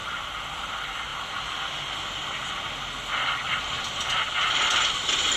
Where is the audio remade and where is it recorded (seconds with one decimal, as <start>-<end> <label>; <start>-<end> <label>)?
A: 0.0-5.4 recorded